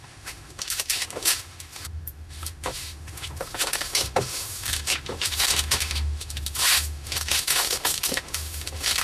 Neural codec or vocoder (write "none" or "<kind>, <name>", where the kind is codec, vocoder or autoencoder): autoencoder, DAC-VAE